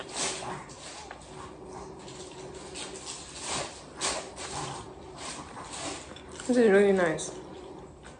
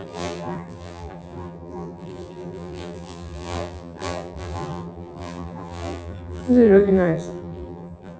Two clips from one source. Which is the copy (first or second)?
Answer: second